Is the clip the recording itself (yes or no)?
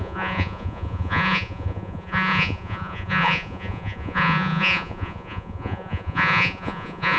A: no